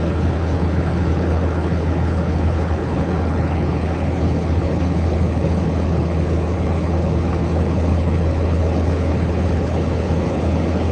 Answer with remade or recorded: remade